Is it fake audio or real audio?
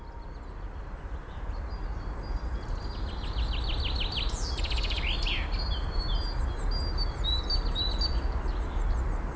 real